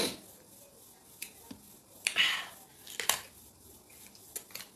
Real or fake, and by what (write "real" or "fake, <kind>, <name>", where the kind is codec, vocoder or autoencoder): real